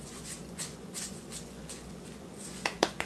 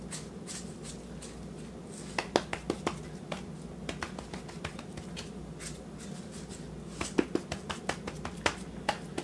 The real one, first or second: second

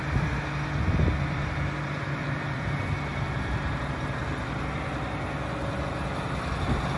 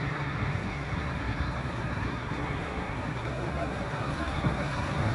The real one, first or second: first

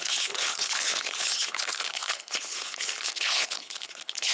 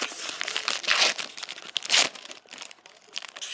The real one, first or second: second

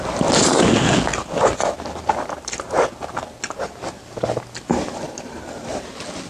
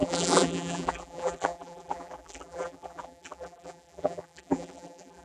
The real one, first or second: first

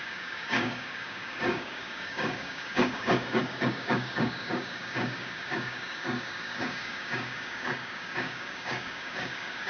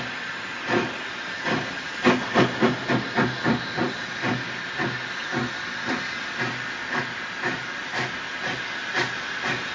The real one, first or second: second